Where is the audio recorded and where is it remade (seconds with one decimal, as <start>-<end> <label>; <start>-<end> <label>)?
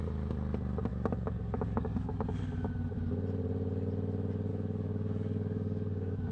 0.0-0.9 recorded; 0.9-2.4 remade; 2.4-4.5 recorded; 4.5-6.3 remade